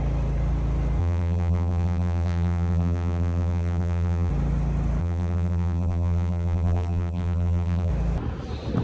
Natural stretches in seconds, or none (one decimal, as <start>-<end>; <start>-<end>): 0.0-1.0; 4.3-5.0; 7.9-8.8